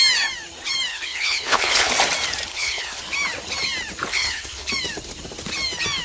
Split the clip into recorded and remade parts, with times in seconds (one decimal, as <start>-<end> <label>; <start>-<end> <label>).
0.0-0.9 recorded; 0.9-1.9 remade; 1.9-2.5 recorded; 2.5-3.0 remade; 3.0-4.1 recorded; 4.1-4.7 remade; 4.7-6.0 recorded